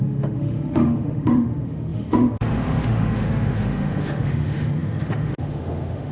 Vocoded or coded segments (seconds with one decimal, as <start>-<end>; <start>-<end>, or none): 0.0-6.1